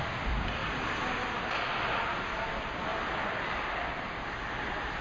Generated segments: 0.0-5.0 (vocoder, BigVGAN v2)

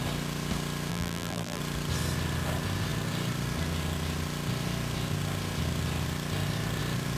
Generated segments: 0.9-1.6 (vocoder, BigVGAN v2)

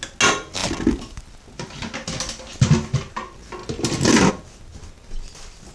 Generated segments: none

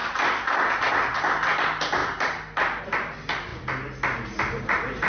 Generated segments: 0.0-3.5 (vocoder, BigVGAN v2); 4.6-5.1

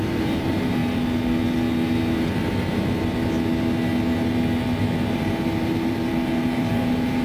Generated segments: 0.0-0.8 (vocoder, BigVGAN v2); 5.1-7.2